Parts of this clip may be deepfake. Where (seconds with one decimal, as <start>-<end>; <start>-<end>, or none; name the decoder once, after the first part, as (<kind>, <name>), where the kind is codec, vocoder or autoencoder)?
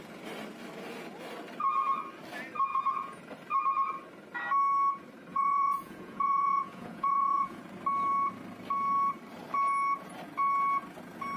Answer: 2.7-3.2 (vocoder, Vocos); 5.3-7.6